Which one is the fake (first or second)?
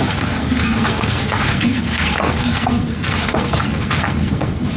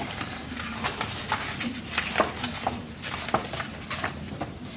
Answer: first